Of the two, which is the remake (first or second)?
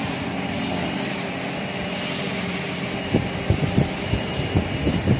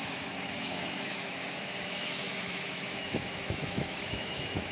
second